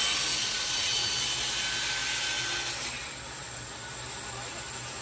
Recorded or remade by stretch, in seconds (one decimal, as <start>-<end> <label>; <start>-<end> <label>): 0.0-0.4 recorded; 0.4-1.1 remade; 1.1-5.0 recorded